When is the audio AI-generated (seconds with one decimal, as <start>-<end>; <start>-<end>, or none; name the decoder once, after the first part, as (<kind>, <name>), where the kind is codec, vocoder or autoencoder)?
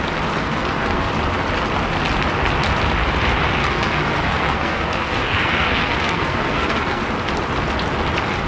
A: 0.4-1.1 (codec, SNAC); 3.6-7.0